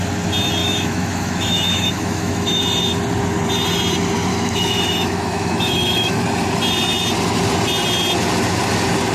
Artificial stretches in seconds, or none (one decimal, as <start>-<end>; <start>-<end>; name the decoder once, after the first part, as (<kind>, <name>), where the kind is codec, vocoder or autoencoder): 0.6-2.6 (autoencoder, DAC-VAE); 4.3-6.2